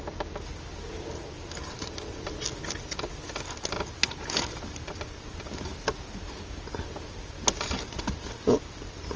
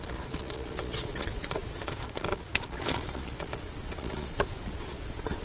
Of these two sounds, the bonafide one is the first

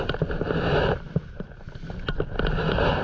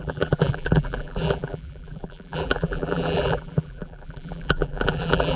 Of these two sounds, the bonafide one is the first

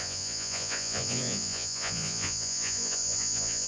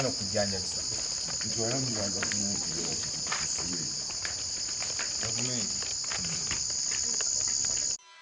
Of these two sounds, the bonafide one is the second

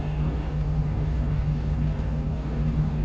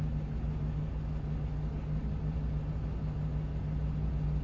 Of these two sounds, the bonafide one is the second